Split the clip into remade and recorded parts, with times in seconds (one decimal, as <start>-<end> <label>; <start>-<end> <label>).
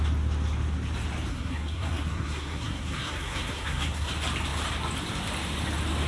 0.0-1.3 recorded; 1.3-4.1 remade; 4.1-6.1 recorded